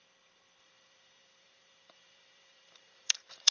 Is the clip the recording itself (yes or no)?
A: no